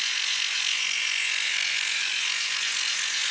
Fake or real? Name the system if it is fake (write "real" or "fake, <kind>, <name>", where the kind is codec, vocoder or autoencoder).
fake, vocoder, Vocos